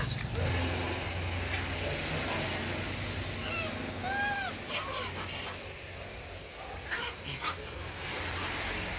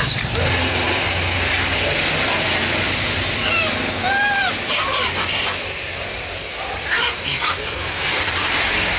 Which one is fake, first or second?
second